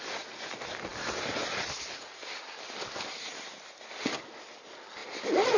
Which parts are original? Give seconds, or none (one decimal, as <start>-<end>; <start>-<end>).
0.0-0.9; 3.9-5.0